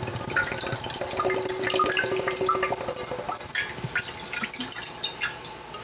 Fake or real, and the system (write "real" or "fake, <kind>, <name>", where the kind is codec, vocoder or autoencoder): real